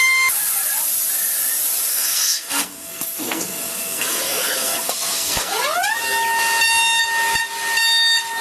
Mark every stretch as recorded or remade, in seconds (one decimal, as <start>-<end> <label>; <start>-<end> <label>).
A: 0.0-1.9 recorded; 1.9-5.5 remade; 5.5-8.4 recorded